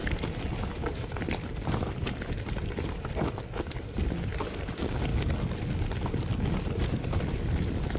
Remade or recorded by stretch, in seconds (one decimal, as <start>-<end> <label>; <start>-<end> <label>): 0.0-8.0 recorded